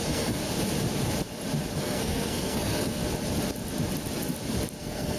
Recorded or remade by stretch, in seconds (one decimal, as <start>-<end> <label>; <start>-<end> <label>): 0.0-0.4 remade; 0.4-1.8 recorded; 1.8-3.0 remade; 3.0-4.8 recorded; 4.8-5.2 remade